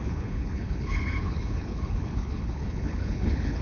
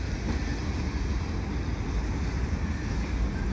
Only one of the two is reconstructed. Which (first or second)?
first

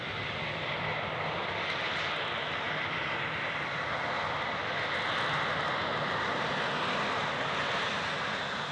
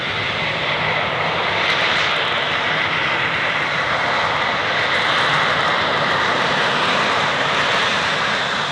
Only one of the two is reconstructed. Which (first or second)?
second